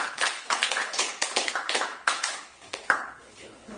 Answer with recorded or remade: remade